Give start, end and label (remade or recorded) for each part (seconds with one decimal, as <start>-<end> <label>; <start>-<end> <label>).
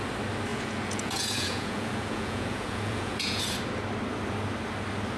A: 0.0-0.5 recorded; 0.5-3.4 remade; 3.4-5.2 recorded